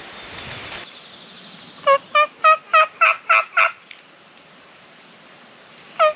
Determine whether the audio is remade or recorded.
recorded